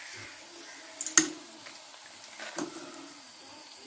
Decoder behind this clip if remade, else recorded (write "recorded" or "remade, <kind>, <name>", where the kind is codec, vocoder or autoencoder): recorded